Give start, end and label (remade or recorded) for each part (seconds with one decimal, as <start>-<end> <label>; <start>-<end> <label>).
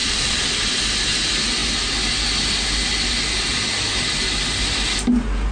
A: 0.0-0.5 remade; 0.5-5.5 recorded